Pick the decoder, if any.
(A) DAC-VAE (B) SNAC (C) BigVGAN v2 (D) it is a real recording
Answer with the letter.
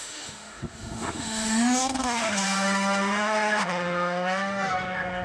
A